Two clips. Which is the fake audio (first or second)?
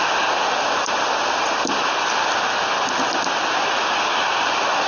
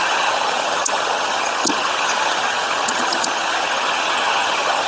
second